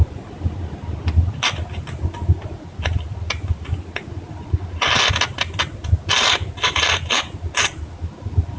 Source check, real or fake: real